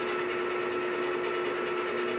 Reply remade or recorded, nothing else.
recorded